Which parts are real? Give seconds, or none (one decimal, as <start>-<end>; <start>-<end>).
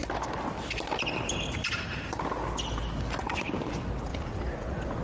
0.0-4.1